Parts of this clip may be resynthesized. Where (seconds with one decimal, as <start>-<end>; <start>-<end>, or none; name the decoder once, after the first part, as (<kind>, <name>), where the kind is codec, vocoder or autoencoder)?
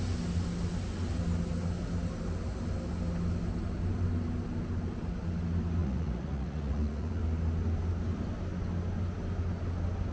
5.8-7.2 (vocoder, Vocos)